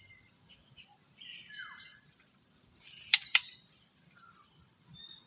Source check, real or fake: fake